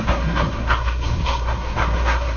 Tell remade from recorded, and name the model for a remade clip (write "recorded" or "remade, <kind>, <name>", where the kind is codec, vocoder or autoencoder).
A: remade, codec, SNAC